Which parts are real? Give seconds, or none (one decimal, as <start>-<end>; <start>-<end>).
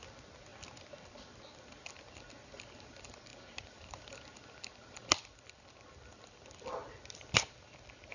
0.0-0.5; 1.9-3.3; 4.0-5.0